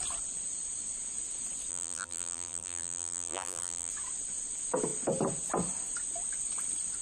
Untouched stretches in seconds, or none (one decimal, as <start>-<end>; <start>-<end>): 0.0-1.7; 3.9-7.0